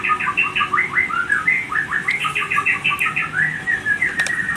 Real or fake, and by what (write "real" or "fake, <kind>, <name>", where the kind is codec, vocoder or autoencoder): real